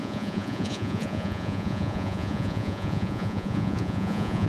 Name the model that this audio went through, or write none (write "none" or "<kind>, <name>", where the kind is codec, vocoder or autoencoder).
vocoder, Vocos